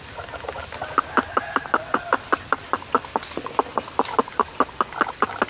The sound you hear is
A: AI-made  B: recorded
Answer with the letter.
B